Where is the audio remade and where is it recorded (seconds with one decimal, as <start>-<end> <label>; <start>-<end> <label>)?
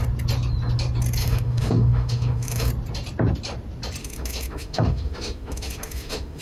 0.0-1.2 recorded; 1.2-2.7 remade; 2.7-4.0 recorded; 4.0-6.4 remade